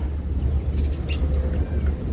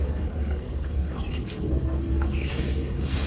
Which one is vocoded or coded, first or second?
second